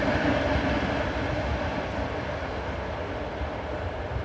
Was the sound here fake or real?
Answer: real